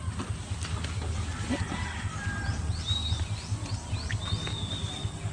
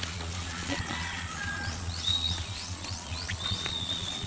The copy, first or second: second